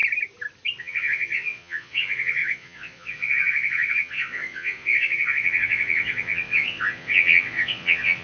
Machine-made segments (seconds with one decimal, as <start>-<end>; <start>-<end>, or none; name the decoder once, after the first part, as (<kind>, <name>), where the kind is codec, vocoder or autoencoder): 0.8-8.2 (vocoder, Vocos)

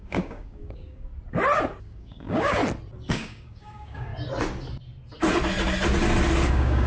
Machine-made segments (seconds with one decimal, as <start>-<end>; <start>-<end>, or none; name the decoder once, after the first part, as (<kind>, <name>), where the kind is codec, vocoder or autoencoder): 0.0-1.1 (codec, DAC); 1.8-2.6; 3.1-4.1; 6.5-6.9

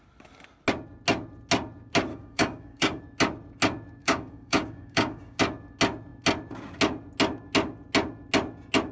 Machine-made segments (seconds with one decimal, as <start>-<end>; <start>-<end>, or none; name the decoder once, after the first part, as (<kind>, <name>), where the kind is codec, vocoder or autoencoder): 2.1-3.0 (codec, DAC); 4.0-5.4

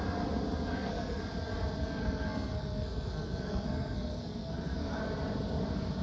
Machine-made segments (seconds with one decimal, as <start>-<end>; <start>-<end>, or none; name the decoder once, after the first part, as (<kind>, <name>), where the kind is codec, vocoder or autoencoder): 0.7-1.2 (codec, SNAC); 1.8-5.0